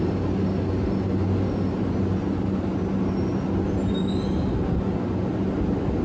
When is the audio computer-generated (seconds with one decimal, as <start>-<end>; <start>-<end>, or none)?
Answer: none